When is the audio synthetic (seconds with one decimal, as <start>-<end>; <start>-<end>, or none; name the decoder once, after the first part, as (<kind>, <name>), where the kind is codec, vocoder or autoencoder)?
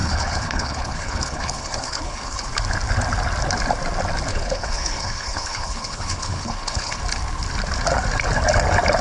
0.0-2.5 (codec, HILCodec); 4.3-7.0